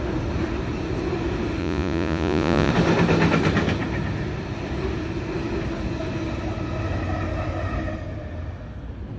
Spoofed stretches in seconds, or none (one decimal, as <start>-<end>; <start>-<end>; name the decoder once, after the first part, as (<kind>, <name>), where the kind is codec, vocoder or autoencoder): 1.6-2.7 (vocoder, Vocos)